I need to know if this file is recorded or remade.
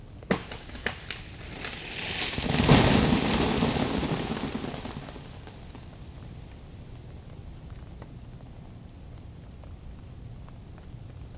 recorded